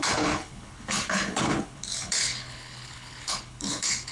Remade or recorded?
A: remade